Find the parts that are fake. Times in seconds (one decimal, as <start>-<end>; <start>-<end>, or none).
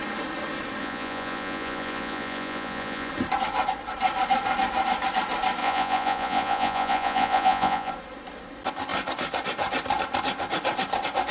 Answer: 0.8-3.1; 5.6-7.9